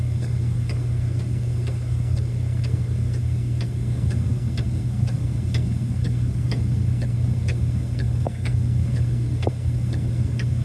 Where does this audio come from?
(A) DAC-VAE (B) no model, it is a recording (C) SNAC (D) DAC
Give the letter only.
C